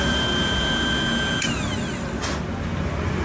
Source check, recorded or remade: recorded